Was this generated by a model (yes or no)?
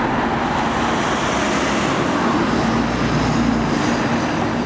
no